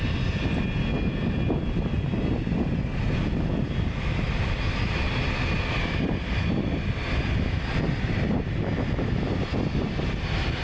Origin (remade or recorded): recorded